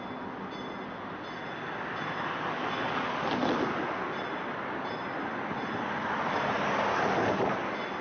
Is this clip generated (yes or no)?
no